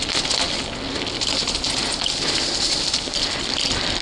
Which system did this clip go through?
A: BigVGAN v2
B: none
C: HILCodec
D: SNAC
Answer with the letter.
B